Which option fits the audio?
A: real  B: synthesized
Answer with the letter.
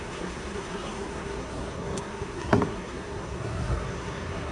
B